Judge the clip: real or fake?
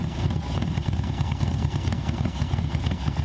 fake